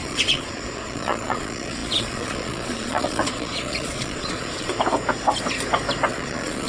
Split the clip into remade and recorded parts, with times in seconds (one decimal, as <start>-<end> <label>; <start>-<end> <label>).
0.0-4.7 remade; 4.7-6.1 recorded; 6.1-6.7 remade